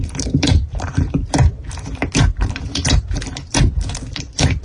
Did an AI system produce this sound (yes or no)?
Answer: yes